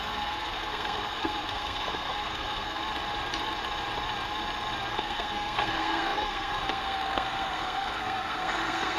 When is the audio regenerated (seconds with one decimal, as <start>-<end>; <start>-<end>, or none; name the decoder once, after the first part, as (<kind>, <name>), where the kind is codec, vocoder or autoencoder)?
0.0-2.8 (codec, SNAC); 4.9-9.0